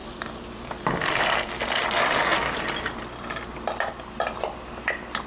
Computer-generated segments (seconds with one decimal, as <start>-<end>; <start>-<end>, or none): none